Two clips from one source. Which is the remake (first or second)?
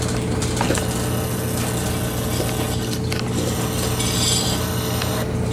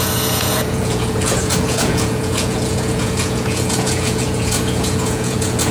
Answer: second